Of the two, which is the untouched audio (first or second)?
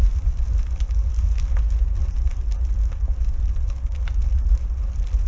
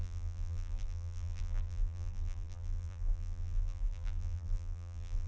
first